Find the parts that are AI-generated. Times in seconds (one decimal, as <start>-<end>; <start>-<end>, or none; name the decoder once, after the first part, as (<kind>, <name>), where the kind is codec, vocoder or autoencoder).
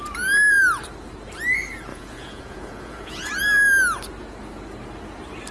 1.9-3.3 (vocoder, Vocos)